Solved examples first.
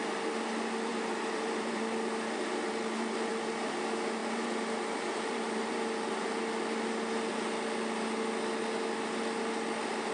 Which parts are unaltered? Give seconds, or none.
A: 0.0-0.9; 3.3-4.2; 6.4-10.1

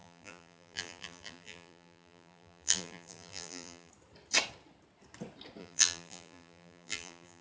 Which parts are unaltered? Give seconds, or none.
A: 3.9-5.6

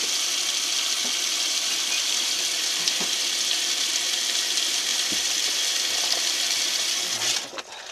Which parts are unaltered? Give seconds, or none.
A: 0.0-1.3; 4.1-4.9; 5.8-7.9

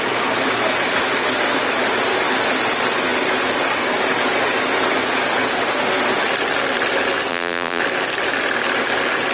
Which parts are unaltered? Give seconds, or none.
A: 0.0-7.3; 7.8-9.3